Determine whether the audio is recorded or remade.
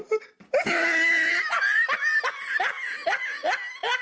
recorded